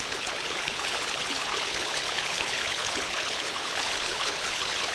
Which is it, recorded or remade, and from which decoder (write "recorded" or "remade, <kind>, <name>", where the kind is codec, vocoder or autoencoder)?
remade, codec, HILCodec